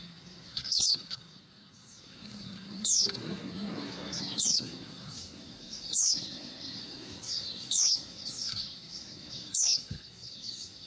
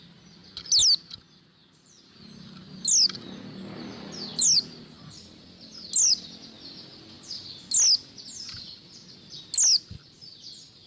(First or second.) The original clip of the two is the second